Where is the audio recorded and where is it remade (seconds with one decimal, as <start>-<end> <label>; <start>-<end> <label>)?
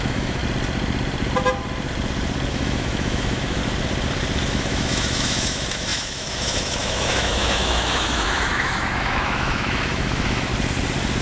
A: 0.0-0.4 remade; 0.4-2.5 recorded; 2.5-3.6 remade; 3.6-4.5 recorded; 4.5-10.5 remade; 10.5-11.2 recorded